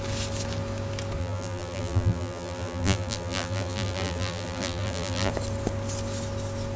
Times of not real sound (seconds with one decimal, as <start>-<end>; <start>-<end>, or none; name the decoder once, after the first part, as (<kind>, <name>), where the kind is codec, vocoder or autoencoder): 1.2-5.3 (vocoder, BigVGAN v2)